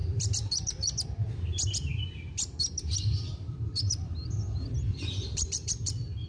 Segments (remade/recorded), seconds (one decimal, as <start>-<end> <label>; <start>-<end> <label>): 0.0-6.3 remade